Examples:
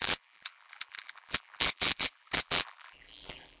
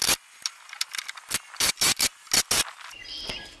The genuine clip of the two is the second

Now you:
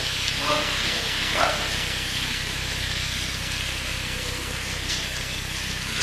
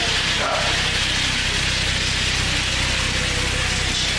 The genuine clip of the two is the second